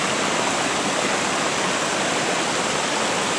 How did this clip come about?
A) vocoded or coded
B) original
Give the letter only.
B